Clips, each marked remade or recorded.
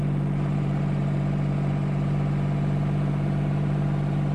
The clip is remade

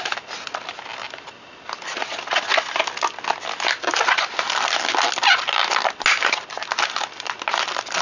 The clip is recorded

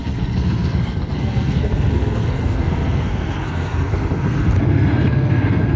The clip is remade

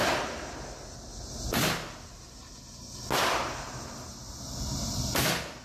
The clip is recorded